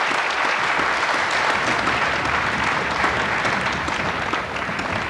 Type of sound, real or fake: real